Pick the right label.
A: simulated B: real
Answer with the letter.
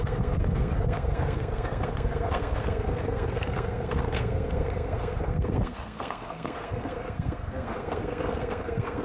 A